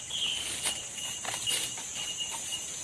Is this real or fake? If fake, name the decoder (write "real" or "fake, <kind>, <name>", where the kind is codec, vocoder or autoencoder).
real